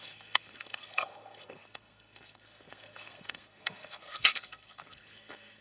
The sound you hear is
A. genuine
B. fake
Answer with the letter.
B